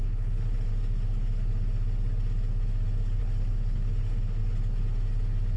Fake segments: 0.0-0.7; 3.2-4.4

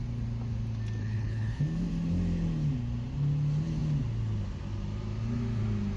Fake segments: 1.0-1.6

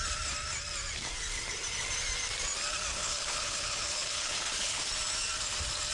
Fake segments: 2.9-4.8

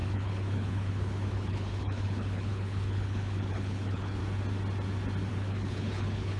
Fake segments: 0.0-4.2; 5.3-6.4

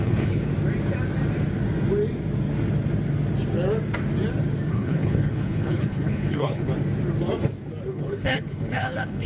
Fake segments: 0.0-0.5; 4.7-6.7; 7.9-9.3

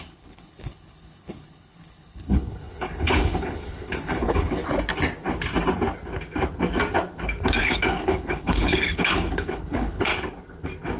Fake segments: 0.0-4.6; 7.6-10.1

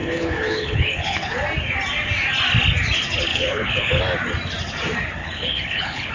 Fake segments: 0.0-1.3; 3.3-4.0; 5.2-6.1

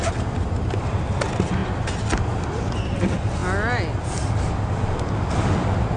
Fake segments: none